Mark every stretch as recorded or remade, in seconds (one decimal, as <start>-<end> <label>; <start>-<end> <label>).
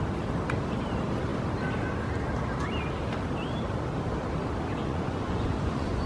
0.0-4.8 recorded; 4.8-6.1 remade